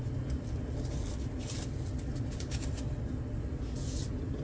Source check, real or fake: real